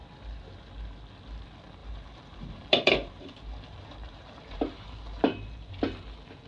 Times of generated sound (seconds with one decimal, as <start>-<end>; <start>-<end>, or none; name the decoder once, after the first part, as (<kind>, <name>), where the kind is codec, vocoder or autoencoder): 1.8-5.7 (vocoder, BigVGAN v2)

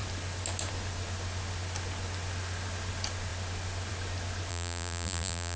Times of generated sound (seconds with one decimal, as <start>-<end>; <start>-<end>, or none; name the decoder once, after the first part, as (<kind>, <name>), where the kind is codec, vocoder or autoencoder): 4.5-5.6 (vocoder, BigVGAN v2)